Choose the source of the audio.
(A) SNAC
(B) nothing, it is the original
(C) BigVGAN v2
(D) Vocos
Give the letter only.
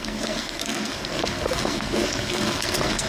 A